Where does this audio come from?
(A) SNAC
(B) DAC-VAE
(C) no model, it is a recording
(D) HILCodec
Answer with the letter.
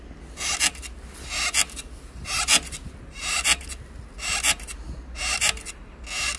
C